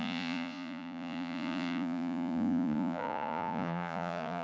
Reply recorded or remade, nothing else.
remade